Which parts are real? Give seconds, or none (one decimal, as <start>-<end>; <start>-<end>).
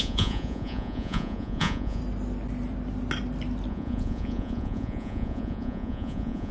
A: 2.0-3.7